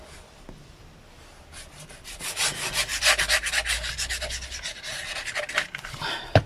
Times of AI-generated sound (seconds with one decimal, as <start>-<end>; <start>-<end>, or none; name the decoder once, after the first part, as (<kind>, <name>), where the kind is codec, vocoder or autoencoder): none